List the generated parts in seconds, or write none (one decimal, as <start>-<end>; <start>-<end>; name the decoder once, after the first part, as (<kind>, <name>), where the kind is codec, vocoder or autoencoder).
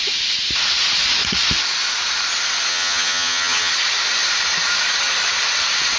2.7-3.7 (vocoder, HiFi-GAN)